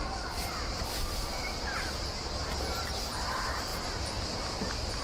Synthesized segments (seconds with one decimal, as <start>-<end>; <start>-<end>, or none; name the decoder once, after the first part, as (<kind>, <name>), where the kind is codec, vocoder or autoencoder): 0.0-1.4 (vocoder, BigVGAN v2); 2.8-5.0